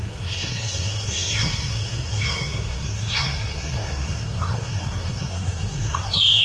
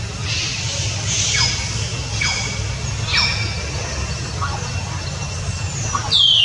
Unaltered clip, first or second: second